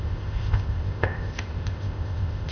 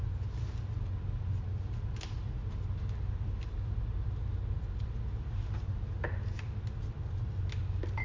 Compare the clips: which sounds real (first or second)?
second